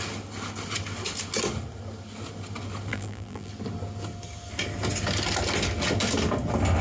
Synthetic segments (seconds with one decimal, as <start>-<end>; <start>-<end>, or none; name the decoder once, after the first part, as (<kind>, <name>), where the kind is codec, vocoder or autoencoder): 2.9-3.5 (vocoder, BigVGAN v2)